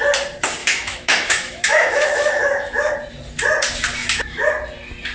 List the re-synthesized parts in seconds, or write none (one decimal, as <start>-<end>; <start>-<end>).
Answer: 0.6-2.9; 4.0-4.5